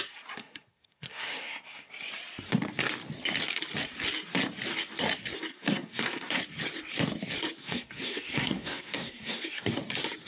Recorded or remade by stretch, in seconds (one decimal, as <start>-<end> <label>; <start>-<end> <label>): 0.0-0.4 recorded; 0.4-1.9 remade; 1.9-5.5 recorded; 5.5-6.4 remade; 6.4-7.6 recorded; 7.6-9.8 remade; 9.8-10.3 recorded